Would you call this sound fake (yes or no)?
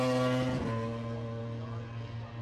no